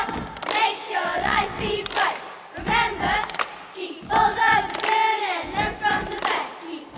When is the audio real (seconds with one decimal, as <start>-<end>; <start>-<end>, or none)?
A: 0.0-0.8; 1.6-7.0